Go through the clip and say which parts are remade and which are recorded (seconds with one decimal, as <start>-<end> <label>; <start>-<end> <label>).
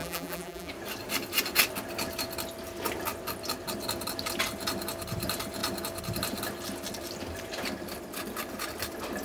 0.0-0.7 remade; 0.7-9.2 recorded